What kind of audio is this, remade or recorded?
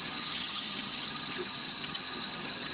remade